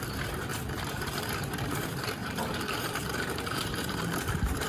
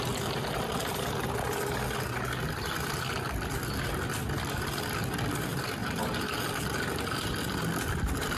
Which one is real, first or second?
second